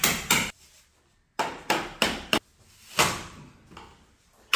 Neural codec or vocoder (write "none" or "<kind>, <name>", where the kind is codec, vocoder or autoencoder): none